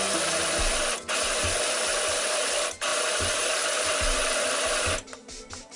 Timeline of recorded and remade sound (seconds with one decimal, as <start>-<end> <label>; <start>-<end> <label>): 0.0-5.8 recorded